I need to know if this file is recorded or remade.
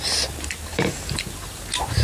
remade